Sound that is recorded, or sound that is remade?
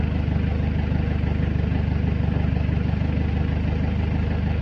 recorded